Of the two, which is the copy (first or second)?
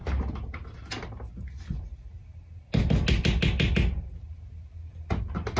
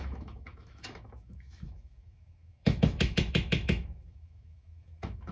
second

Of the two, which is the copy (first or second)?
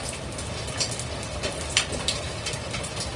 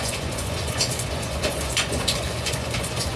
second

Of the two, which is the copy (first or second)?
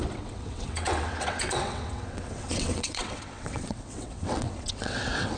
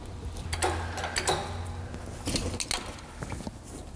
first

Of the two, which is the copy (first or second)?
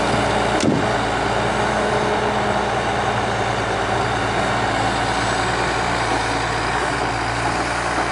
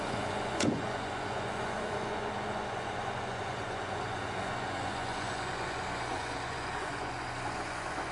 second